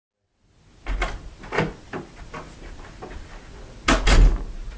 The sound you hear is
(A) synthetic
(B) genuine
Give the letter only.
B